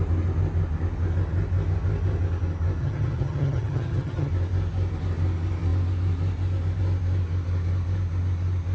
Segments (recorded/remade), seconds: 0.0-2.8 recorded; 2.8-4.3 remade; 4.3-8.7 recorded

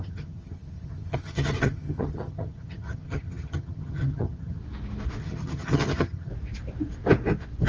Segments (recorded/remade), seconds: 0.0-4.6 remade; 4.6-5.2 recorded; 5.2-6.3 remade; 6.3-7.7 recorded